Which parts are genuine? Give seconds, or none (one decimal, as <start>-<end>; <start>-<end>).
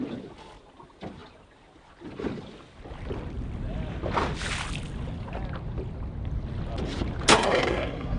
0.0-7.3